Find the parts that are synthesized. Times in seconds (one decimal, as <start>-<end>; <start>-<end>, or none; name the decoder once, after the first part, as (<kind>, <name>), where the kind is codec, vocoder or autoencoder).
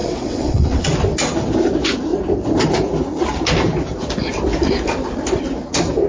0.0-0.9 (vocoder, WaveNeXt)